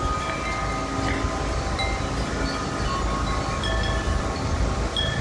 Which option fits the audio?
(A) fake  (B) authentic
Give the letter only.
B